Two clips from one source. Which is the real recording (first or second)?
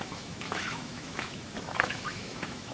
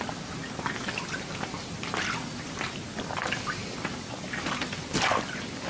second